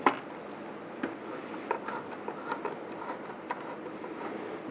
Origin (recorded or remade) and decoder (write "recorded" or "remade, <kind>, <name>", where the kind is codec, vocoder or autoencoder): recorded